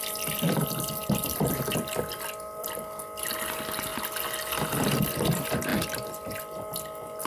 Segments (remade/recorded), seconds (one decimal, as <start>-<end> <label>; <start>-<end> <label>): 0.0-3.9 remade; 3.9-4.4 recorded; 4.4-7.3 remade